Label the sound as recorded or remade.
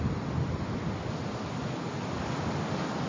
recorded